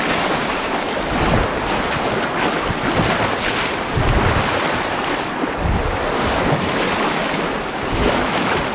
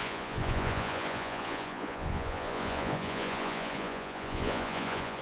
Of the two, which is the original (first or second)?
first